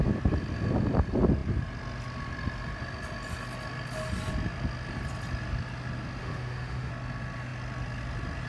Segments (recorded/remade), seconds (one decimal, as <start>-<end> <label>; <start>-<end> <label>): 0.0-6.2 recorded; 6.2-6.9 remade; 6.9-8.5 recorded